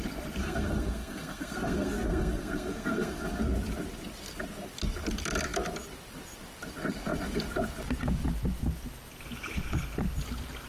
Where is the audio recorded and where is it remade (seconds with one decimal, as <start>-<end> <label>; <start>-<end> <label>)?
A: 0.0-0.4 recorded; 0.4-3.4 remade; 3.4-10.7 recorded